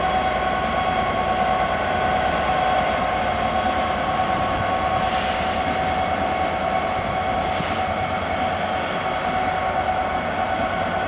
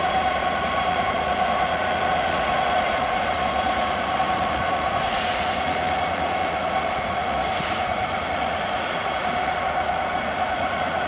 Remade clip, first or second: second